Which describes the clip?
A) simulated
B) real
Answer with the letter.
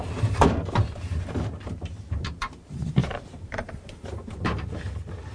A